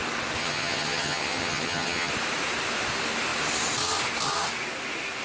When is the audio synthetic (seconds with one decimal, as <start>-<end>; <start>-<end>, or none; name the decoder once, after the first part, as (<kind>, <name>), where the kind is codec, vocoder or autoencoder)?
0.4-2.1 (vocoder, HiFi-GAN)